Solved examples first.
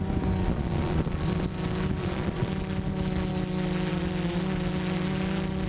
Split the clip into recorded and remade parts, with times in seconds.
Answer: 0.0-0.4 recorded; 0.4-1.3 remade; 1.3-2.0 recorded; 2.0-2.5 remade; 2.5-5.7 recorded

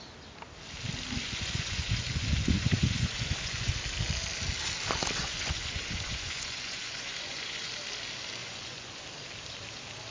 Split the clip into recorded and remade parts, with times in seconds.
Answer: 0.0-1.2 recorded; 1.2-3.7 remade; 3.7-5.2 recorded; 5.2-7.7 remade; 7.7-8.4 recorded; 8.4-9.0 remade; 9.0-10.1 recorded

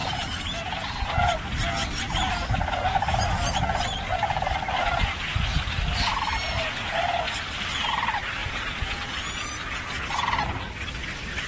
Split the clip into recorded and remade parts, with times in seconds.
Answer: 0.0-1.3 remade; 1.3-8.4 recorded; 8.4-10.1 remade; 10.1-11.5 recorded

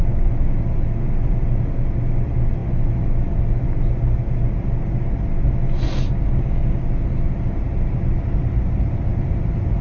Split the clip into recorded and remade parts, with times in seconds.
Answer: 0.0-9.8 recorded

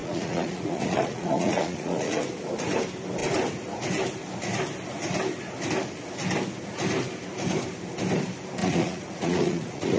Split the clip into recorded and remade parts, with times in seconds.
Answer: 0.0-2.2 remade; 2.2-8.6 recorded; 8.6-10.0 remade